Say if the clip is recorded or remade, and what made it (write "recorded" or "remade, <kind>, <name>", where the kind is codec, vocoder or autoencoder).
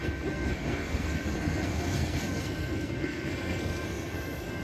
remade, codec, SNAC